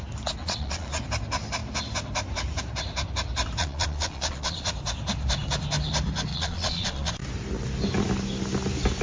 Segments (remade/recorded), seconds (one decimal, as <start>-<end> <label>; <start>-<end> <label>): 0.0-0.4 recorded; 0.4-1.0 remade; 1.0-3.6 recorded; 3.6-4.7 remade; 4.7-6.3 recorded; 6.3-7.1 remade; 7.1-9.0 recorded